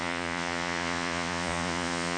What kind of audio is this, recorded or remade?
remade